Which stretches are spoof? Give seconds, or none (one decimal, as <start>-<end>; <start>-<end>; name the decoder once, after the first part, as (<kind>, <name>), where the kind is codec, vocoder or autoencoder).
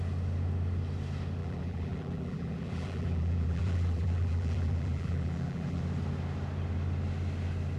1.4-5.8 (vocoder, BigVGAN v2)